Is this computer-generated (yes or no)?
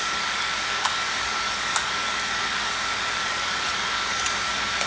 yes